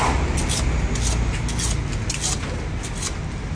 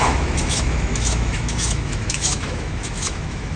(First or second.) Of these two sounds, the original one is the first